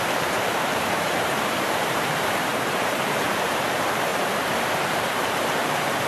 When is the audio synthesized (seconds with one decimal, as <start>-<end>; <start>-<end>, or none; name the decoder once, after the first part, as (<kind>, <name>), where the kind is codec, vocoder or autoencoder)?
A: 0.0-6.1 (vocoder, BigVGAN v2)